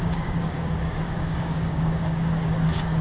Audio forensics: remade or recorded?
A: remade